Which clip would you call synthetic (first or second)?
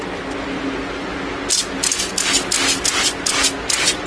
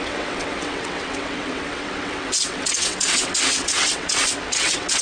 second